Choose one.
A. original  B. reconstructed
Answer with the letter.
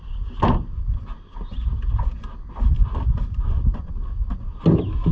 A